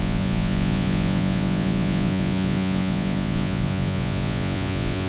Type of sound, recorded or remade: remade